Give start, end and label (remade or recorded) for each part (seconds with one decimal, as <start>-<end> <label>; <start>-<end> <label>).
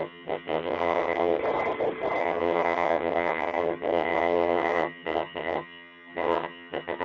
0.0-1.4 remade; 1.4-2.2 recorded; 2.2-7.0 remade